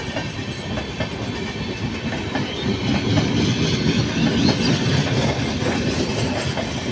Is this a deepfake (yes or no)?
no